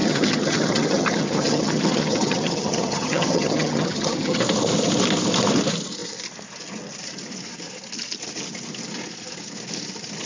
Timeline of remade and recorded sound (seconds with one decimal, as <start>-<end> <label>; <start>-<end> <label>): 0.0-4.4 remade; 4.4-10.3 recorded